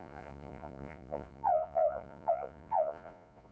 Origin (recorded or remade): remade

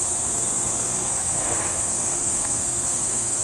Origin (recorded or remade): remade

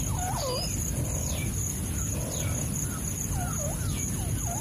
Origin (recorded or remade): recorded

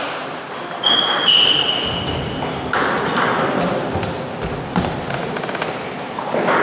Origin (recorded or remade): recorded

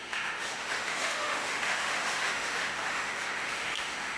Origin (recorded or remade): remade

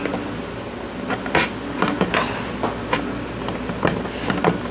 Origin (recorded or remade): recorded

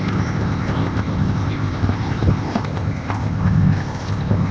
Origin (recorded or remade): remade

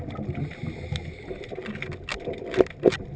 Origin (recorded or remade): recorded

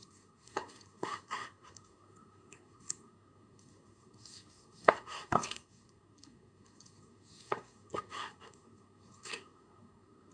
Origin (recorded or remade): remade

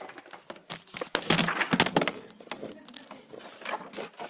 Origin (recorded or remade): recorded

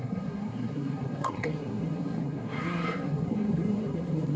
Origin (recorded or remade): remade